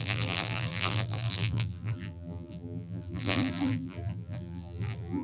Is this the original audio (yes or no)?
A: no